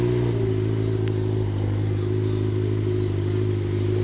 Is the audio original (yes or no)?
yes